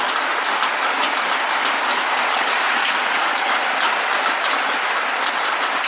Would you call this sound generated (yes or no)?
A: no